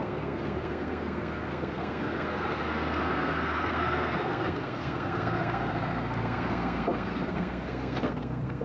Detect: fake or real fake